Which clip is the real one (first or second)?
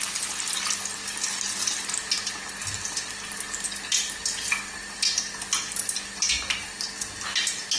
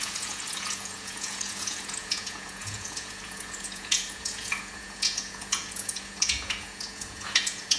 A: first